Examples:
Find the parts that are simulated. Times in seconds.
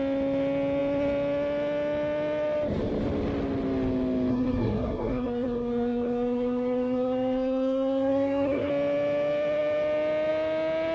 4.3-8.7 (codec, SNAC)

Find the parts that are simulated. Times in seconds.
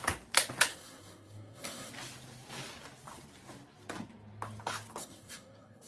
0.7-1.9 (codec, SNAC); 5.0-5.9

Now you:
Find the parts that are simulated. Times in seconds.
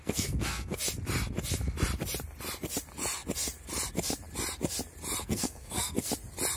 0.0-0.8 (codec, SNAC); 5.2-6.1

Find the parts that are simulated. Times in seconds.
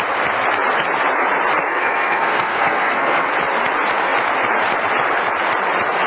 1.7-3.3 (codec, SNAC)